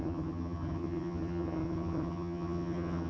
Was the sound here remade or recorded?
remade